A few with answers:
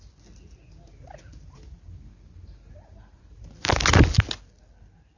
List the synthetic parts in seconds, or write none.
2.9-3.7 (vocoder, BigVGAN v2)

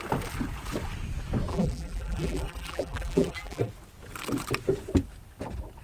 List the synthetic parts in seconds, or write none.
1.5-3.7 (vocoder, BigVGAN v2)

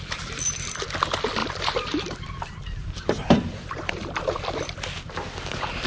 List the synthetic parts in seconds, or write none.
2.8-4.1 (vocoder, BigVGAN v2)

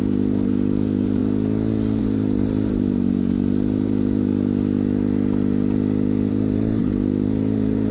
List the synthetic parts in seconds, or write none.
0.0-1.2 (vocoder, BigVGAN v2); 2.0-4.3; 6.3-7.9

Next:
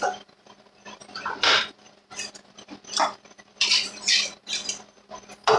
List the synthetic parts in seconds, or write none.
1.0-4.4 (vocoder, BigVGAN v2)

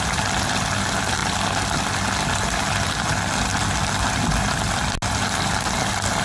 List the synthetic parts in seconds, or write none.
none

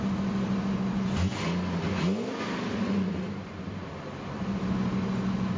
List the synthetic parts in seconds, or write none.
1.3-4.7 (vocoder, BigVGAN v2)